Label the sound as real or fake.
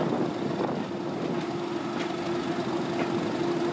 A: real